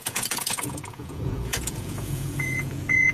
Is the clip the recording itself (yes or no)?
no